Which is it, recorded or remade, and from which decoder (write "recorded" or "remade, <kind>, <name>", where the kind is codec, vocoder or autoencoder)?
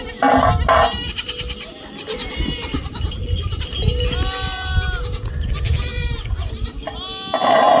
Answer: recorded